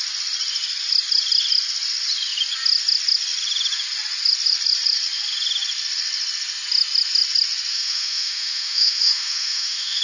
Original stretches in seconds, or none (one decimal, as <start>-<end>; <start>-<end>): 0.0-7.7